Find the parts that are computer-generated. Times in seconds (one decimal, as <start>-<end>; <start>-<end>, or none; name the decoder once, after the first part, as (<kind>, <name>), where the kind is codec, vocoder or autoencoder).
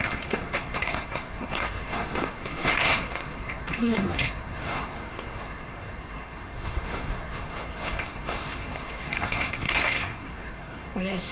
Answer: 0.0-11.3 (codec, SNAC)